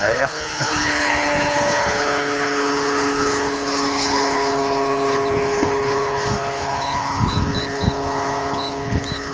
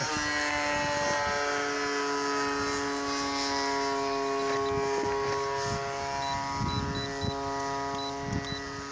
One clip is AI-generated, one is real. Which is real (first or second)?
second